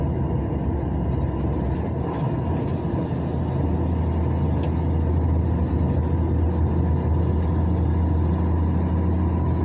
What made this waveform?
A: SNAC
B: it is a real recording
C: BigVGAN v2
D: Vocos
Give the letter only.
B